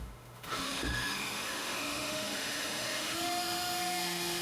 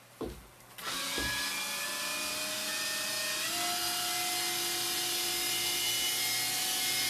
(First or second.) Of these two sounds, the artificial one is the first